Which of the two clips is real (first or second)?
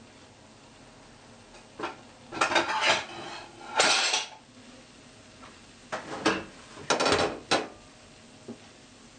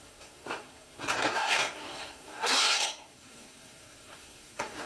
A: first